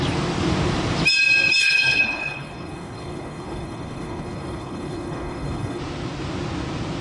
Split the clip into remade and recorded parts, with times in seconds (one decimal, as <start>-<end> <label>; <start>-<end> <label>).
0.0-1.6 recorded; 1.6-5.8 remade; 5.8-7.0 recorded